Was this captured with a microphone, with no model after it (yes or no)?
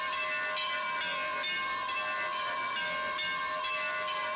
yes